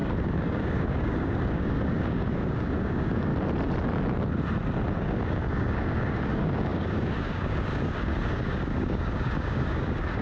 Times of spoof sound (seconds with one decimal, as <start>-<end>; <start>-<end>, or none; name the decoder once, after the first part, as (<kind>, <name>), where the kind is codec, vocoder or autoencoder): 0.0-3.3 (codec, DAC); 5.0-10.2